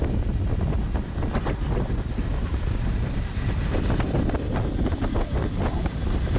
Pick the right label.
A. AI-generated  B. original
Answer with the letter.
B